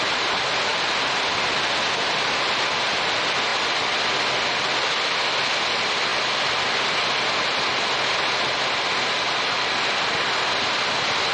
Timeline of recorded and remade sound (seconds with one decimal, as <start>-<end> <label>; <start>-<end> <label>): 0.0-11.3 recorded